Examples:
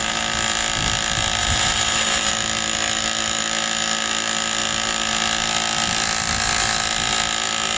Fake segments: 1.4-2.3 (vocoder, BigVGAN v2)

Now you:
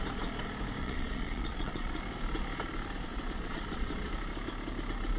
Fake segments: 0.8-2.0 (vocoder, Vocos); 3.1-4.1

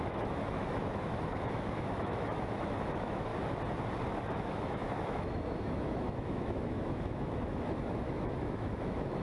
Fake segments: 0.0-3.3 (autoencoder, DAC-VAE); 4.2-9.2

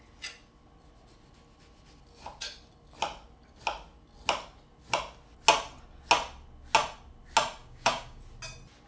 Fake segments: 7.6-8.2 (codec, DAC)